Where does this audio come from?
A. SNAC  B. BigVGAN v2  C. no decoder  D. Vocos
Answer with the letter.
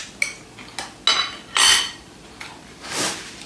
C